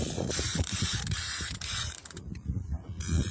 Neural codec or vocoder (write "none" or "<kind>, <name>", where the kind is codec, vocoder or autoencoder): vocoder, Vocos